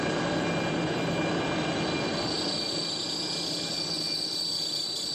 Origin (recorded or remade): recorded